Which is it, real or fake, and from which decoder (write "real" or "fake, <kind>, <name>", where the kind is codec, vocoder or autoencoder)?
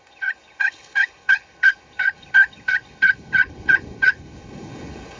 fake, codec, HILCodec